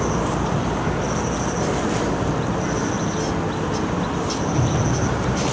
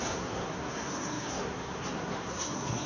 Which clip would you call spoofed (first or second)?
second